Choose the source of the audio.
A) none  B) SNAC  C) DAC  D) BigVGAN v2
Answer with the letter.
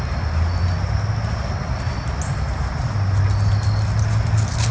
A